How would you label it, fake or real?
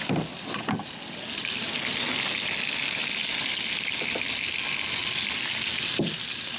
real